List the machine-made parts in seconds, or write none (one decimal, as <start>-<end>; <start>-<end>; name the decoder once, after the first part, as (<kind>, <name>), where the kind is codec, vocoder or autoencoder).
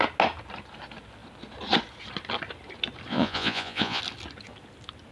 3.1-4.0 (vocoder, Vocos)